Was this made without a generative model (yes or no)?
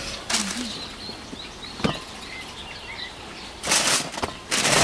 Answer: yes